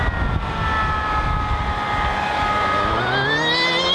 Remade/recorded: recorded